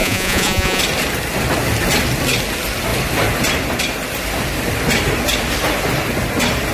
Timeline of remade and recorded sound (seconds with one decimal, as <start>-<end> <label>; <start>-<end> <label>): 0.0-0.8 remade; 0.8-6.7 recorded